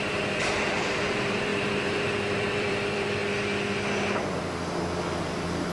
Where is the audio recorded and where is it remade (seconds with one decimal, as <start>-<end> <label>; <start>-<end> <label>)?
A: 0.0-3.2 remade; 3.2-5.2 recorded; 5.2-5.7 remade